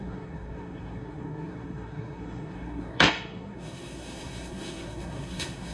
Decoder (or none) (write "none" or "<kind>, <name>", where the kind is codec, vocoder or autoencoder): codec, SNAC